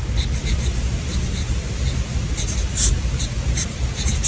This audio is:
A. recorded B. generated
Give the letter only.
A